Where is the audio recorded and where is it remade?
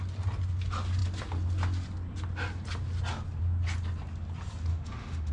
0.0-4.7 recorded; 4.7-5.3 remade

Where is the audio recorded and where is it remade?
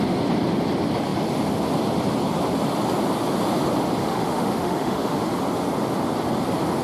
0.0-4.0 recorded; 4.0-5.2 remade; 5.2-6.8 recorded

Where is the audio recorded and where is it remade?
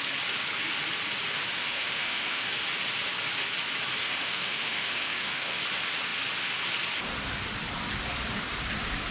0.0-1.6 recorded; 1.6-2.5 remade; 2.5-4.0 recorded; 4.0-5.6 remade; 5.6-9.1 recorded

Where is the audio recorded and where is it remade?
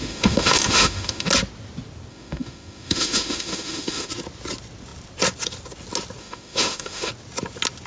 0.0-1.3 remade; 1.3-2.1 recorded; 2.1-4.1 remade; 4.1-6.2 recorded; 6.2-7.1 remade; 7.1-7.9 recorded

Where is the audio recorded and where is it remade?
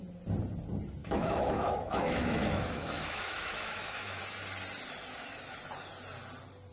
0.0-1.0 recorded; 1.0-4.2 remade; 4.2-6.7 recorded